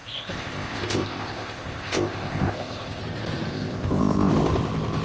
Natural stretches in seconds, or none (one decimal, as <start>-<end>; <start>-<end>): 3.0-3.5; 4.3-5.0